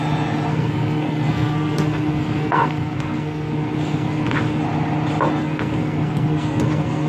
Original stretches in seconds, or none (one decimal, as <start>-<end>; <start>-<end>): 0.0-0.5; 4.6-5.4

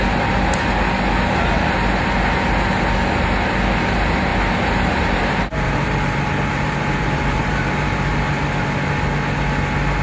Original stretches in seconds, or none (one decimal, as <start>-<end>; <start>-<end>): 0.0-4.3; 8.1-10.0

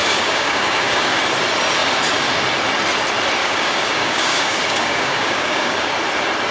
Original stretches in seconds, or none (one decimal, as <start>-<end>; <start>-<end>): 1.2-3.4; 5.9-6.5

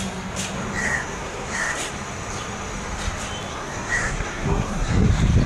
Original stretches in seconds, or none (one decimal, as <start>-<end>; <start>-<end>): 0.0-0.8; 1.9-3.5; 5.1-5.5

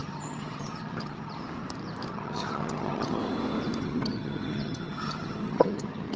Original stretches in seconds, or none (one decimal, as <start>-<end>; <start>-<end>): 1.4-2.1; 3.2-3.8

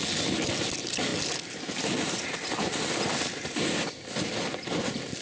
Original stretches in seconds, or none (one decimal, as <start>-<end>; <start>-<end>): 0.0-5.2

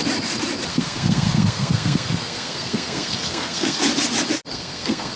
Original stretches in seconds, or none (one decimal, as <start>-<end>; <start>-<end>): 0.0-0.7; 3.8-4.5